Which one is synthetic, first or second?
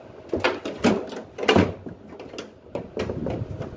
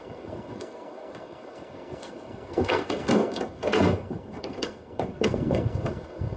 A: second